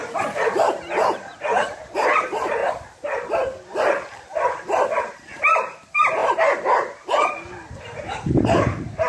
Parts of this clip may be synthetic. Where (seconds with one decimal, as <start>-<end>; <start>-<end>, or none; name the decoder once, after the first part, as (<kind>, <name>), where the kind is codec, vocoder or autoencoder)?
0.0-2.6 (vocoder, BigVGAN v2); 5.0-9.1